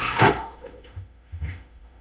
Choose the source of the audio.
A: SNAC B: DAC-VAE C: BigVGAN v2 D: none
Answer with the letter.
B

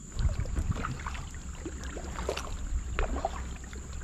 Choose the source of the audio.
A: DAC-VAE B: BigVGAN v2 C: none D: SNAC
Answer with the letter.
C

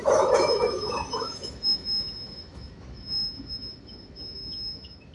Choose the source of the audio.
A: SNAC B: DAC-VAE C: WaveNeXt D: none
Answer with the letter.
B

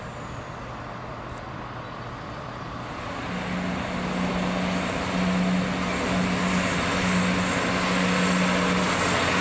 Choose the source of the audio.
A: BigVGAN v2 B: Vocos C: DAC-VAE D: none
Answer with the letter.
D